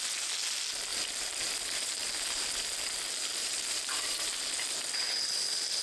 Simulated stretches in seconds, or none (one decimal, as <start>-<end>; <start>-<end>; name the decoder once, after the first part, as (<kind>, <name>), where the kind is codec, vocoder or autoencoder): 0.9-2.6 (vocoder, BigVGAN v2); 3.3-4.4